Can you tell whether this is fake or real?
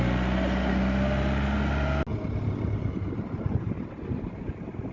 real